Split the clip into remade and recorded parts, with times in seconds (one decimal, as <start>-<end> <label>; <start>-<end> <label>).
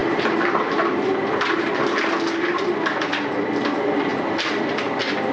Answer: 0.0-0.7 remade; 0.7-5.3 recorded